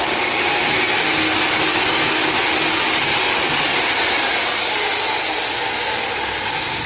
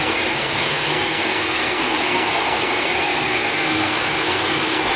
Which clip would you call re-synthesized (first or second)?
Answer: second